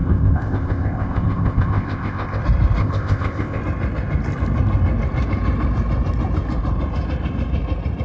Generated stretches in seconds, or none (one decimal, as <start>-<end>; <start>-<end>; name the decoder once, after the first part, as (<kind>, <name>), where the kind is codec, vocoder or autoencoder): 0.0-2.4 (codec, ZipCodec); 2.8-3.6